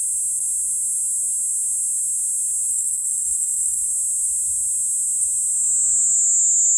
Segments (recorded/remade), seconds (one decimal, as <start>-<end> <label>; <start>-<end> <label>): 0.0-2.7 recorded; 2.7-3.9 remade; 3.9-6.8 recorded